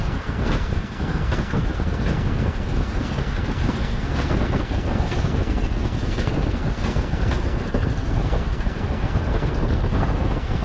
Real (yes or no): no